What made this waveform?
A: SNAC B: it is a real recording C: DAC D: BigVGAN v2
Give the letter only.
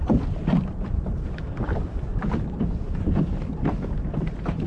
D